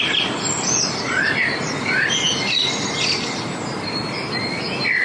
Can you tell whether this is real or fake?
real